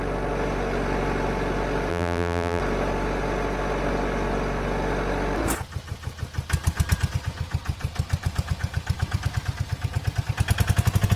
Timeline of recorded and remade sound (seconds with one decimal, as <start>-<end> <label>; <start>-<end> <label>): 0.0-1.9 recorded; 1.9-2.6 remade; 2.6-11.2 recorded

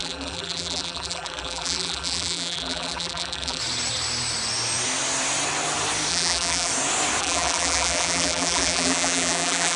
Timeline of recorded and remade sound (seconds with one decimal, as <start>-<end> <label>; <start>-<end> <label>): 0.0-3.6 remade; 3.6-6.1 recorded; 6.1-6.7 remade; 6.7-7.2 recorded; 7.2-9.8 remade

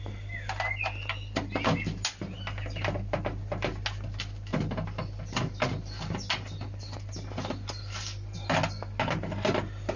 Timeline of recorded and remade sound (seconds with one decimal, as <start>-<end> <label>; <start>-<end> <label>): 0.0-10.0 recorded

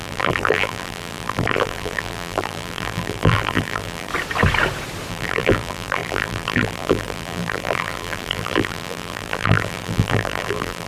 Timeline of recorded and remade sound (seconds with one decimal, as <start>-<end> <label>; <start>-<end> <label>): 0.0-4.1 remade; 4.1-5.1 recorded; 5.1-10.9 remade

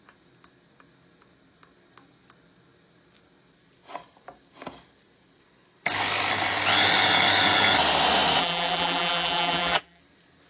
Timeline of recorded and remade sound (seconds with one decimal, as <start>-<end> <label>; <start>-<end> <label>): 0.0-8.4 recorded; 8.4-10.0 remade; 10.0-10.5 recorded

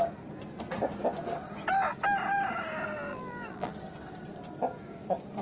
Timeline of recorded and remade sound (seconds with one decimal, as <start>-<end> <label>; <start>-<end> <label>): 0.0-3.1 recorded; 3.1-3.7 remade; 3.7-5.4 recorded